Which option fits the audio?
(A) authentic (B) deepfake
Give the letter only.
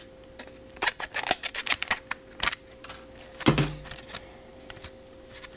A